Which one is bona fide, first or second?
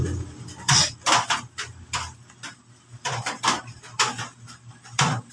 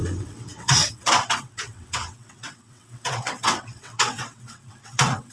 first